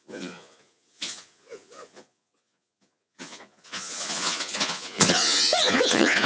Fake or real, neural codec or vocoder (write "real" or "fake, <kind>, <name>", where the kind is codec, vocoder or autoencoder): fake, vocoder, Vocos